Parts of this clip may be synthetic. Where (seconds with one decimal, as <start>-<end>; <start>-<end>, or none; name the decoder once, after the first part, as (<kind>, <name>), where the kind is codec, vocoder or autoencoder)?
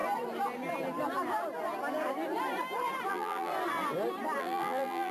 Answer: 3.1-3.5 (vocoder, BigVGAN v2); 4.4-5.1